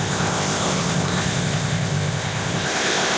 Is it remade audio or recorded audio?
remade